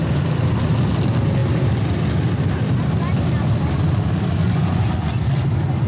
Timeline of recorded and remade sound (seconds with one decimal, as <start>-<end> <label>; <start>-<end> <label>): 0.0-4.4 recorded; 4.4-5.2 remade; 5.2-5.9 recorded